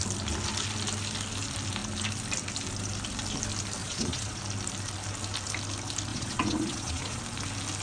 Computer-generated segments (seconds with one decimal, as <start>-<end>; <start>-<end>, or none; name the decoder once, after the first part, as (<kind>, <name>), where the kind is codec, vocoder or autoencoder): 3.8-4.4 (vocoder, Vocos); 6.1-7.2